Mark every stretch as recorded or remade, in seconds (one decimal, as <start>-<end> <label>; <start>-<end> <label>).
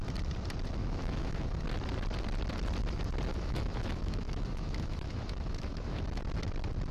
0.0-0.8 recorded; 0.8-1.6 remade; 1.6-3.3 recorded; 3.3-6.2 remade; 6.2-6.9 recorded